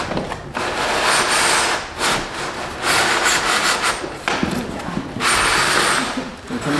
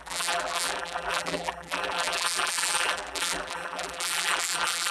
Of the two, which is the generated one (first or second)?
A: second